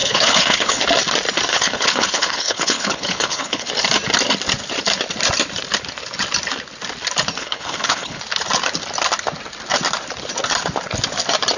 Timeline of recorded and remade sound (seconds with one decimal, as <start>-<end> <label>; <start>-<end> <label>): 0.0-0.8 remade; 0.8-1.5 recorded; 1.5-3.7 remade; 3.7-7.4 recorded; 7.4-8.2 remade; 8.2-11.6 recorded